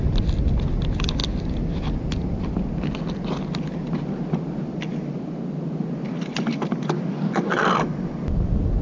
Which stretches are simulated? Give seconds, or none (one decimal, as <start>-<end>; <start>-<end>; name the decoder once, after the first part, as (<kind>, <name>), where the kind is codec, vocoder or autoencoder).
none